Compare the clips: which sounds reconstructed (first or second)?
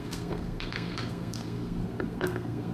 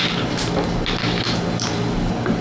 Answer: first